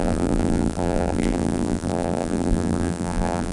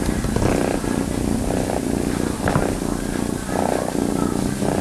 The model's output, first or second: first